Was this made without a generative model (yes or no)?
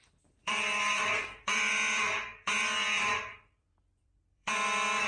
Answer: no